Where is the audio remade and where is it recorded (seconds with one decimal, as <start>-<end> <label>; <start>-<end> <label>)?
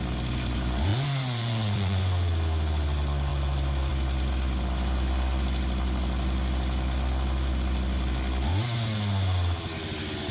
0.0-0.9 recorded; 0.9-2.0 remade; 2.0-10.3 recorded